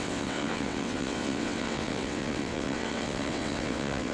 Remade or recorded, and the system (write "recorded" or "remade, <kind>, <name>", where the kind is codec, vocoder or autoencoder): remade, vocoder, WaveNeXt